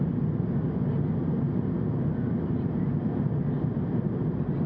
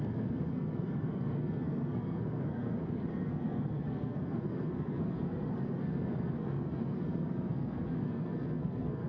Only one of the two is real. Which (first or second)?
first